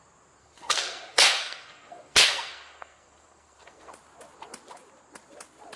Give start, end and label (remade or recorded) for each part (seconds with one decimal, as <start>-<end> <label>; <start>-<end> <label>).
0.0-0.4 recorded; 0.4-3.9 remade; 3.9-5.8 recorded